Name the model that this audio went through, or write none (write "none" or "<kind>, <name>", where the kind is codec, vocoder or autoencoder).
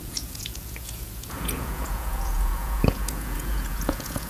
vocoder, Vocos